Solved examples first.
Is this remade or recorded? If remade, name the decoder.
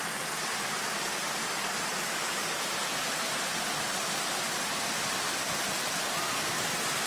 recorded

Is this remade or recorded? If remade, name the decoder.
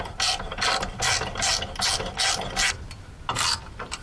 recorded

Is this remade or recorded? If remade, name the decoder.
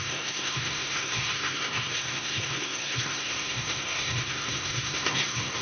remade, codec, SNAC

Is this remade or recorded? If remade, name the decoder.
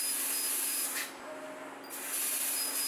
recorded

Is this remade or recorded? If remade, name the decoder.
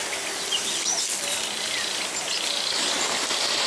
recorded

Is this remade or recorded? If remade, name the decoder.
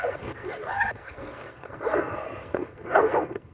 remade, codec, SNAC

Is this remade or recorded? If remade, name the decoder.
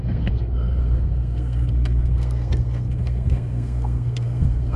remade, codec, SNAC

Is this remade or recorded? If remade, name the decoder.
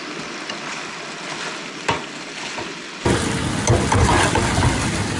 recorded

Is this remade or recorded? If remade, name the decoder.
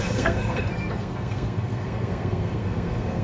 remade, codec, SNAC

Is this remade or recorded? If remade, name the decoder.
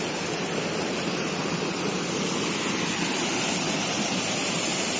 recorded